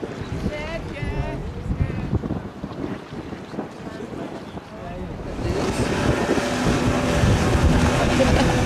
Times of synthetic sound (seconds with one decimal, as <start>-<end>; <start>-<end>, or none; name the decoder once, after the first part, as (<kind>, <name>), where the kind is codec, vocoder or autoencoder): 1.4-3.2 (vocoder, BigVGAN v2)